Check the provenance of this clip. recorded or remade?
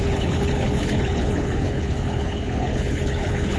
remade